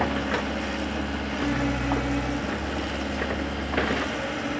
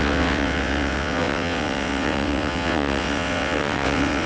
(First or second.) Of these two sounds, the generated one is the second